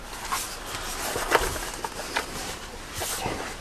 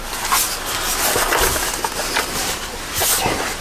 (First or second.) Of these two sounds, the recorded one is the second